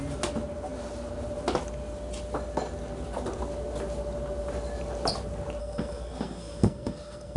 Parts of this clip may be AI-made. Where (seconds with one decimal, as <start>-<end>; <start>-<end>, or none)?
5.6-7.4